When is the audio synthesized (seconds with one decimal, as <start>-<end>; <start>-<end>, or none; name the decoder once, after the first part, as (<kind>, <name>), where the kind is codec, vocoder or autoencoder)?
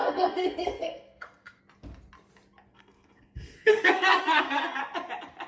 0.0-1.6 (codec, SNAC); 2.7-4.8